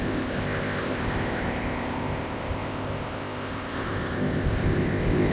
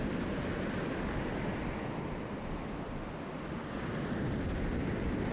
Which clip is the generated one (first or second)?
first